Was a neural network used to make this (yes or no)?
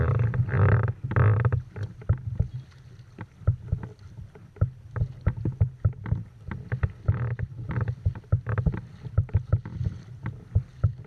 no